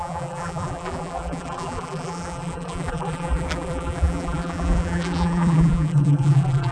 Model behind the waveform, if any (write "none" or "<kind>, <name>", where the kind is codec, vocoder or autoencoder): vocoder, BigVGAN v2